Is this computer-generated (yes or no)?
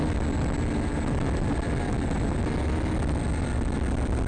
no